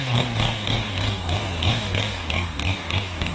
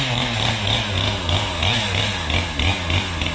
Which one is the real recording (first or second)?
second